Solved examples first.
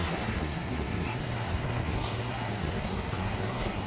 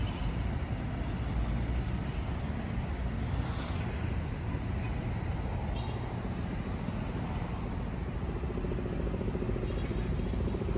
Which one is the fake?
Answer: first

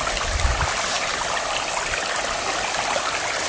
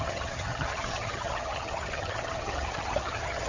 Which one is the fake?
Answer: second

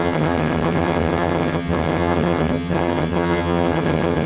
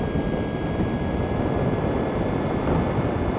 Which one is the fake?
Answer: first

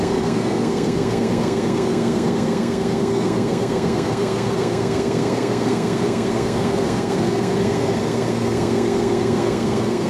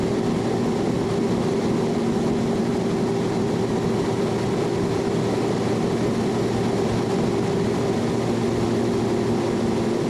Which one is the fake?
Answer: first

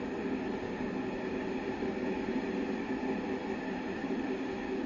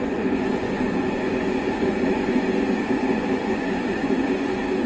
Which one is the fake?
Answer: second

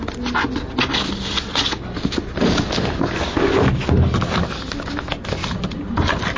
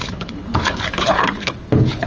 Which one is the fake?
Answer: second